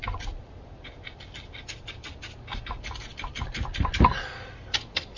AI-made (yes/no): no